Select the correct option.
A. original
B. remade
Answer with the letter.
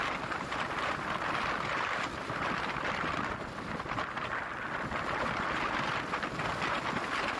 A